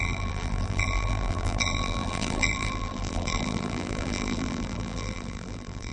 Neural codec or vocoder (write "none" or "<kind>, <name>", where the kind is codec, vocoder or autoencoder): vocoder, BigVGAN v2